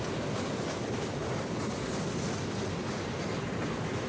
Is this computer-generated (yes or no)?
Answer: yes